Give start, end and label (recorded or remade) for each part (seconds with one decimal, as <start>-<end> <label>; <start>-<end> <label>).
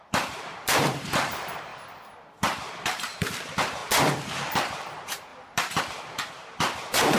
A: 0.0-1.7 remade; 1.7-2.2 recorded; 2.2-3.8 remade; 3.8-4.4 recorded; 4.4-7.2 remade